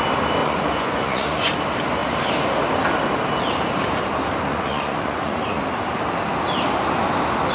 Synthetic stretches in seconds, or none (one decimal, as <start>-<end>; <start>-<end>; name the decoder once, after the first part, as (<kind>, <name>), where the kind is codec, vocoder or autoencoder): 0.4-1.5 (vocoder, Vocos); 4.5-5.6